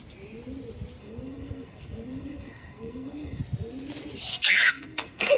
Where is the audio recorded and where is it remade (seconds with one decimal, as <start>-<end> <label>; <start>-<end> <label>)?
0.0-1.0 recorded; 1.0-3.4 remade; 3.4-4.3 recorded; 4.3-5.4 remade